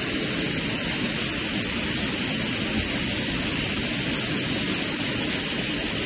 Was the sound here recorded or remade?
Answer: recorded